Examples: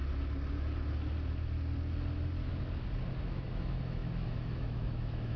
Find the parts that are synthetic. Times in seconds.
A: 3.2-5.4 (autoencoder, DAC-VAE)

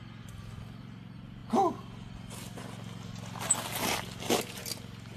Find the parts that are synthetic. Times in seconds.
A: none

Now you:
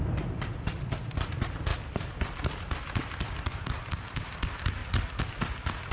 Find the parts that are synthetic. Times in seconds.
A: 0.0-1.7 (vocoder, BigVGAN v2); 3.6-4.8; 5.3-5.9